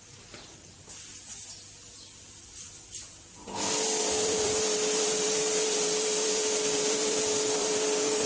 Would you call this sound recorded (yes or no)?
no